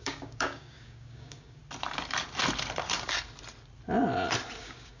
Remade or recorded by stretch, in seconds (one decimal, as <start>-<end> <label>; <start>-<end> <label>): 0.0-1.6 remade; 1.6-4.6 recorded; 4.6-5.0 remade